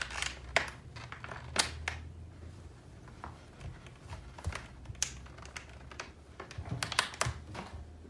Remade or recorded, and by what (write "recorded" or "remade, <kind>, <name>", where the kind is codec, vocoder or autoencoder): recorded